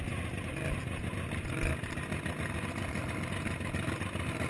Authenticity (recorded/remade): recorded